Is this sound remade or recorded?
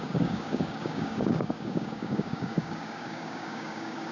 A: remade